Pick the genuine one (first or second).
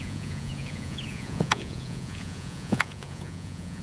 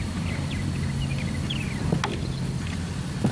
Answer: second